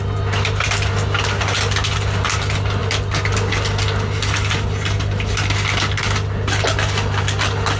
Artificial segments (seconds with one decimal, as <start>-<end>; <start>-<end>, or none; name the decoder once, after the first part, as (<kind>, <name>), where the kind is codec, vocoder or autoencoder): none

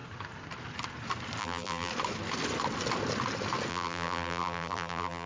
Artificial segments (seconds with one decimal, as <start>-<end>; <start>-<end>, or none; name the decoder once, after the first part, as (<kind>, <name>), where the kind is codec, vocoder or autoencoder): 1.4-1.9 (vocoder, BigVGAN v2); 3.7-5.3

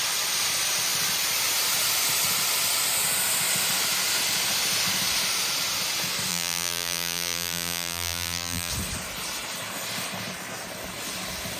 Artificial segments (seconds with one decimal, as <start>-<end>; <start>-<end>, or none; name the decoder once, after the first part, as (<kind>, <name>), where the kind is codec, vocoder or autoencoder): 6.3-8.7 (vocoder, BigVGAN v2)